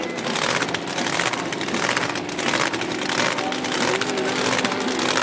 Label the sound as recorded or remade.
recorded